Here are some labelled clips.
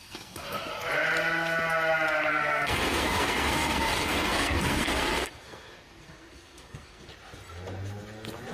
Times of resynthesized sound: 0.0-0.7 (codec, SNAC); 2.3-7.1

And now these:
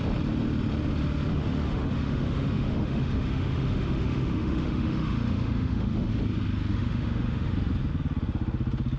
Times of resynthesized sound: 1.3-6.1 (autoencoder, DAC-VAE); 6.7-7.5